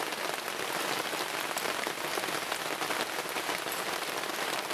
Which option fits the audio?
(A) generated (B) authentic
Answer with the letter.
B